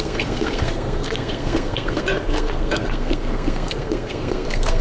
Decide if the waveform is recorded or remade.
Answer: remade